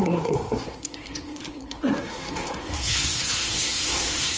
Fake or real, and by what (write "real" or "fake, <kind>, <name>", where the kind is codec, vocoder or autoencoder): fake, codec, SNAC